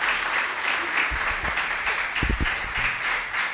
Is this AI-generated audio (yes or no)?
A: no